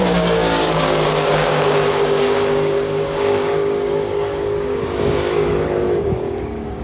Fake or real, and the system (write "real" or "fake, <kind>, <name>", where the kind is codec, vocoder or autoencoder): fake, codec, DAC